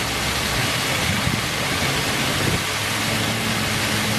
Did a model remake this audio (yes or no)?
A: no